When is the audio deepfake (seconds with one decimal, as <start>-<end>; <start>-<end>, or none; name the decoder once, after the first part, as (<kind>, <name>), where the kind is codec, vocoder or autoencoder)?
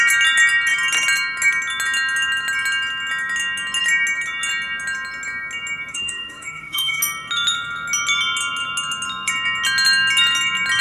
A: 5.9-7.0 (autoencoder, DAC-VAE)